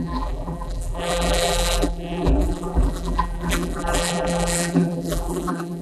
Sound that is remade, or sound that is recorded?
remade